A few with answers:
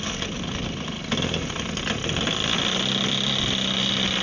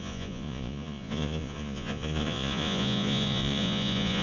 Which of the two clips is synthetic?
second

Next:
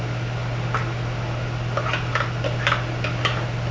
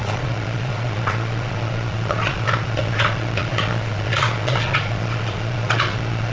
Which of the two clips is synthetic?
second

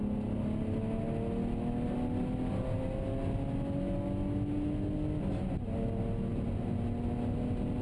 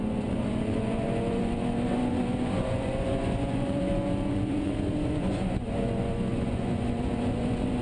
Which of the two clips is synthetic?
second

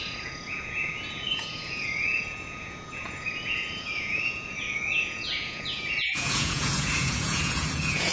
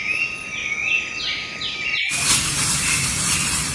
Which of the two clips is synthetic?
first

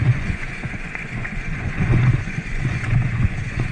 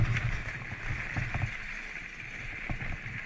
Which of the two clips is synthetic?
first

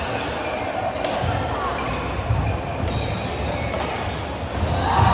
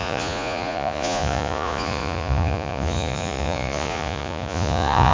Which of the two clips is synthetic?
second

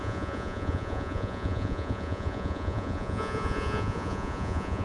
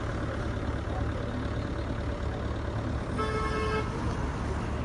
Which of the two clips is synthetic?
first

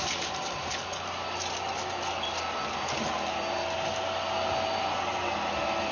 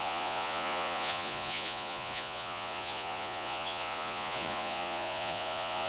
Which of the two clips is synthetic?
second